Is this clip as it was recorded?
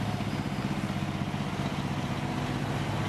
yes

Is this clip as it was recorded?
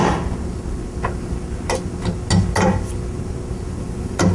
yes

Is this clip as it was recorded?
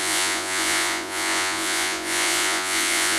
no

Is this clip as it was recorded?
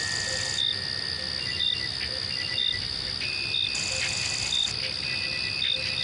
yes